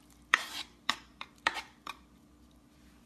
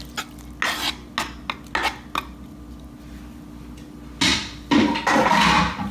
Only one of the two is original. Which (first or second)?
second